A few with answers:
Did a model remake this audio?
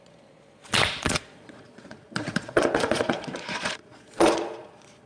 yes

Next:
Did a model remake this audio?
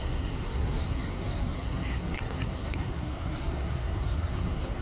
yes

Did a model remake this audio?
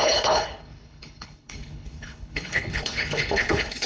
yes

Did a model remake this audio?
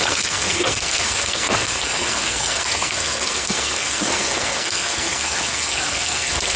yes